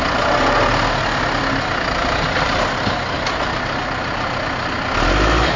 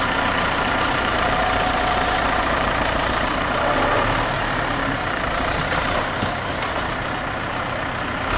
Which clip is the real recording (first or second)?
first